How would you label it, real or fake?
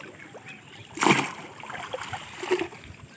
real